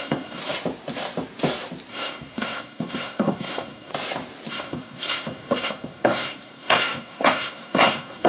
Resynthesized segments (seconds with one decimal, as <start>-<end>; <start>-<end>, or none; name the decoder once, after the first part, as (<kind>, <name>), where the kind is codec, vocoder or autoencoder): 0.0-0.4 (codec, SNAC); 1.9-3.9; 4.5-8.3